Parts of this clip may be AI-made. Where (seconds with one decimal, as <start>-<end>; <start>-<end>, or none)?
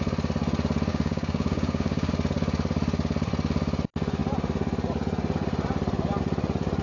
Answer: 0.9-2.1